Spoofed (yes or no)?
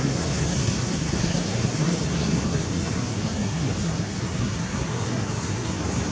yes